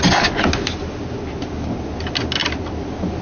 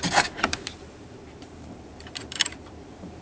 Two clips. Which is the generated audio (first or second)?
second